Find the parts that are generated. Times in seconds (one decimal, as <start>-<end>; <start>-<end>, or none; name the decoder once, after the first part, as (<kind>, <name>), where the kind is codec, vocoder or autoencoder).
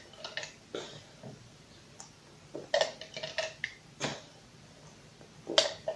none